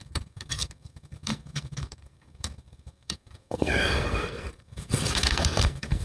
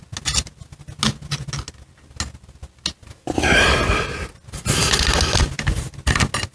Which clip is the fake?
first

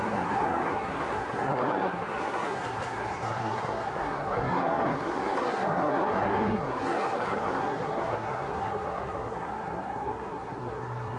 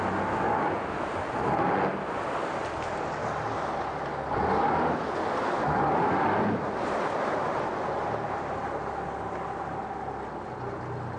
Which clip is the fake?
first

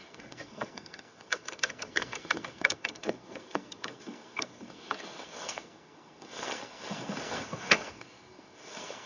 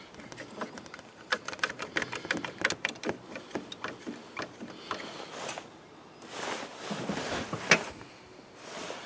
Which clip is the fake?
first